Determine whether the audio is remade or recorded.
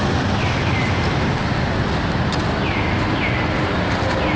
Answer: recorded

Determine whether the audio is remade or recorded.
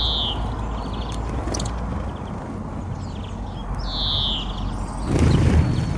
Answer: recorded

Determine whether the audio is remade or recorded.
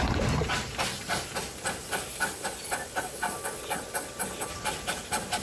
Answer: recorded